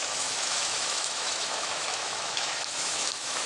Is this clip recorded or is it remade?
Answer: remade